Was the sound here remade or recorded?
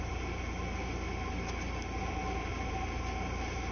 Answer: recorded